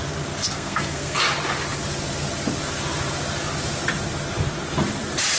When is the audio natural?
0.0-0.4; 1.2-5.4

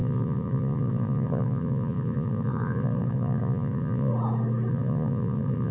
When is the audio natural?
4.1-4.7

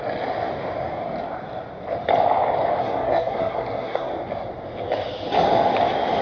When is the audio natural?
0.0-2.8; 4.1-6.2

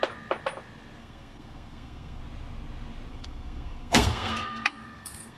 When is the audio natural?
0.0-1.0; 2.2-3.1

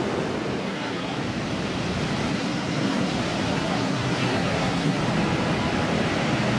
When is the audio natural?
0.0-0.6; 1.2-2.3; 3.1-3.5; 5.0-6.6

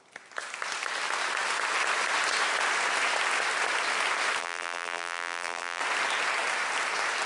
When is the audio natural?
0.0-4.4; 5.8-7.3

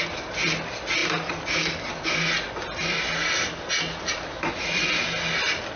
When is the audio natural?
0.0-5.8